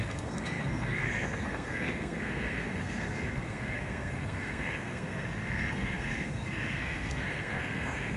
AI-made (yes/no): yes